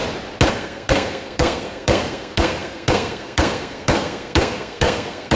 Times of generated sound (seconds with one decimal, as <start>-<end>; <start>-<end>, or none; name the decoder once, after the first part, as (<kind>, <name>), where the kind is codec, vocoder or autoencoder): 0.5-5.4 (codec, SNAC)